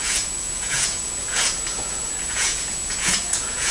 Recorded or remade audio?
remade